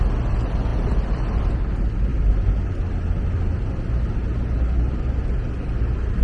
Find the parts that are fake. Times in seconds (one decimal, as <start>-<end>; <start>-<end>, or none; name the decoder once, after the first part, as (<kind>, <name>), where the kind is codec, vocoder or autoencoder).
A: none